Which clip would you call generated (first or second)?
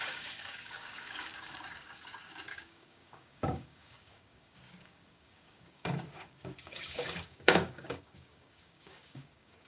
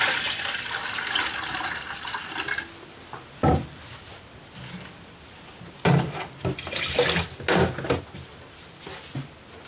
first